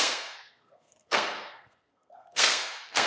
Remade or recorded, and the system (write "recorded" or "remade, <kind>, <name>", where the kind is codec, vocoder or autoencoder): remade, codec, SNAC